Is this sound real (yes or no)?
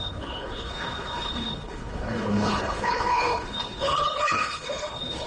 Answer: no